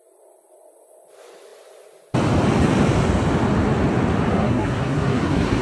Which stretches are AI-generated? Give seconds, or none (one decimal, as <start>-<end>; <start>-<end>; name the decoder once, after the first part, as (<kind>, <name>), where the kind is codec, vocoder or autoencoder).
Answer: 4.3-5.6 (codec, SNAC)